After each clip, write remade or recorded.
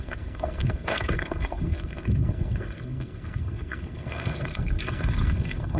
remade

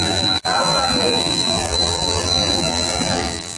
remade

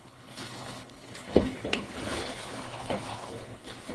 remade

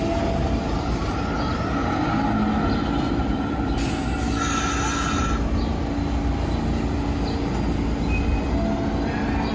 recorded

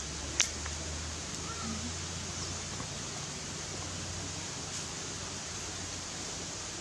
recorded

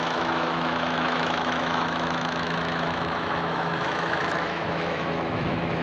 remade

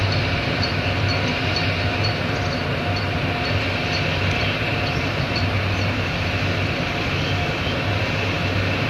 recorded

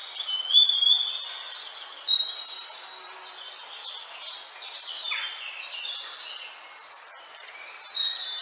recorded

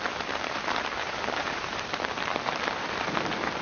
remade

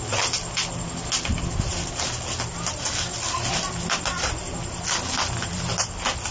recorded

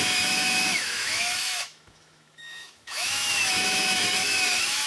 remade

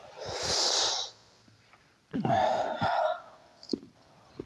remade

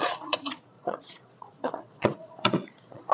remade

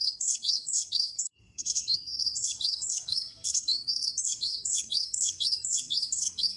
remade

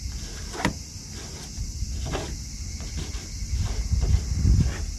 remade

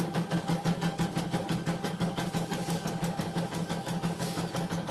remade